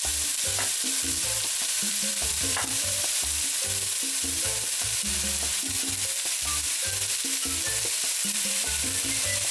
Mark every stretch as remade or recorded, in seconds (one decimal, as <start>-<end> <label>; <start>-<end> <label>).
0.0-3.6 remade; 3.6-7.7 recorded; 7.7-9.5 remade